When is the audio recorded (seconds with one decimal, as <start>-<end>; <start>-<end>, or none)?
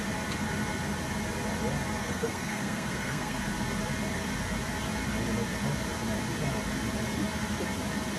0.0-2.0; 3.4-8.2